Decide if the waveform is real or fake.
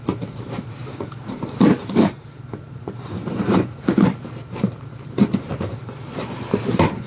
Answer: fake